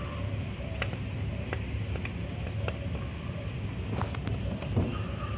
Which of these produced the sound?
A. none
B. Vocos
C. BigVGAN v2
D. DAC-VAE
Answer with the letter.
A